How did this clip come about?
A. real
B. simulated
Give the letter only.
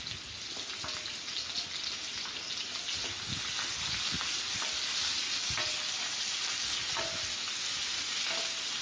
A